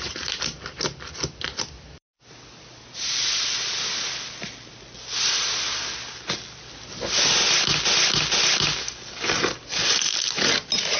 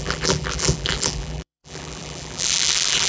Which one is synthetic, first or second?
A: second